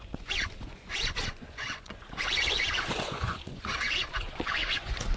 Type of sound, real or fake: fake